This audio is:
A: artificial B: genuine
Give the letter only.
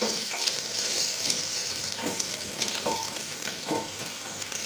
A